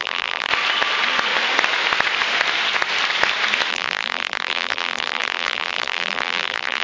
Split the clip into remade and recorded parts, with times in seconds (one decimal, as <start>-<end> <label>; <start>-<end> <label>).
0.0-0.5 remade; 0.5-3.7 recorded; 3.7-6.8 remade